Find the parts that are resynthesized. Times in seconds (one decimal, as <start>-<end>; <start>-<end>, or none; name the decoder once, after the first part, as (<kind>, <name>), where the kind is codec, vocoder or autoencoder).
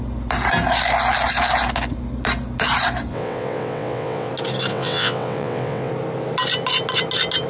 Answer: 3.1-4.3 (vocoder, WaveNeXt); 4.7-5.9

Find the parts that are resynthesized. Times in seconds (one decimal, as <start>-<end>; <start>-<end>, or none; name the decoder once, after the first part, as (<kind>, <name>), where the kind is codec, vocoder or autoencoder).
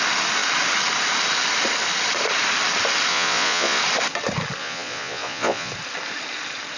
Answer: 3.1-3.8 (vocoder, Vocos); 4.6-5.7